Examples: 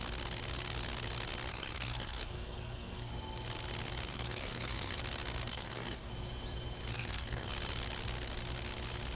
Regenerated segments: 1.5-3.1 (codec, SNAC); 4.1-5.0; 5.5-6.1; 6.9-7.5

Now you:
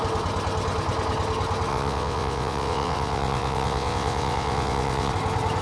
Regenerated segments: 1.7-5.1 (vocoder, WaveNeXt)

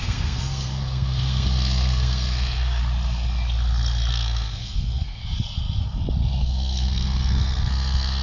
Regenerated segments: 0.0-2.8 (codec, SNAC); 4.1-5.2; 6.4-8.2

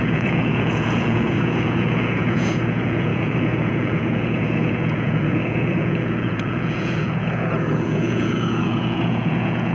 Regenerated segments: 0.0-9.7 (vocoder, Vocos)

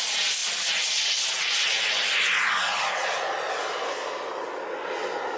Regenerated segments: none

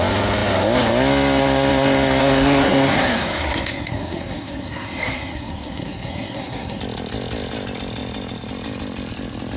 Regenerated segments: 2.2-6.8 (codec, SNAC)